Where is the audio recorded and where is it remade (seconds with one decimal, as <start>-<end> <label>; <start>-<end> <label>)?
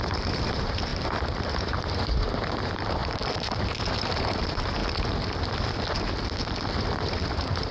0.0-4.8 remade; 4.8-7.3 recorded; 7.3-7.7 remade